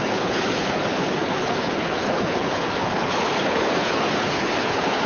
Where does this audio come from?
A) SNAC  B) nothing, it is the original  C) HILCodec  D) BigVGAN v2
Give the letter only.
C